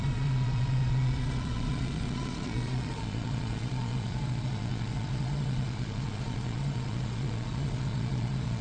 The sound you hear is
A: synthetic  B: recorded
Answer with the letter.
A